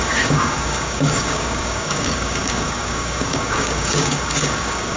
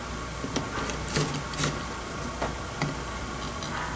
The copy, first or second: first